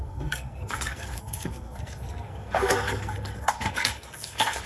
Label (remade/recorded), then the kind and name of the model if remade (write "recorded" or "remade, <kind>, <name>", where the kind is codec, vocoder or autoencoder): remade, codec, SNAC